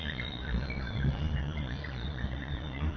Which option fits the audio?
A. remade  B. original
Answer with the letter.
A